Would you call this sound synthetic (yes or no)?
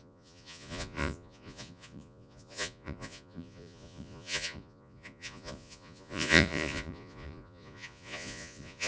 yes